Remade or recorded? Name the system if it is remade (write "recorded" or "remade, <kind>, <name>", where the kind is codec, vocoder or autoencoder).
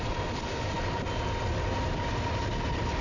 recorded